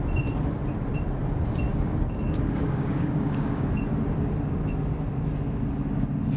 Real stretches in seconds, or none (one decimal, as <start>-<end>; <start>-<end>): 0.0-1.7; 3.7-6.4